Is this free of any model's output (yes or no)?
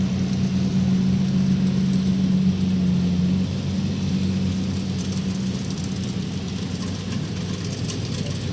yes